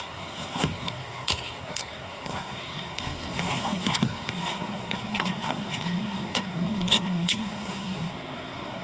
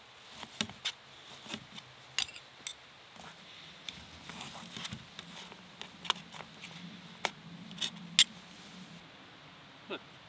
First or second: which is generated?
first